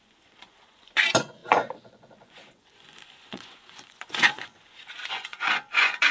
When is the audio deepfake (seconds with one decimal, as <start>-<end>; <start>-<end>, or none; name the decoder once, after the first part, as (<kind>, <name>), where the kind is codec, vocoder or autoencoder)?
0.0-6.1 (vocoder, Vocos)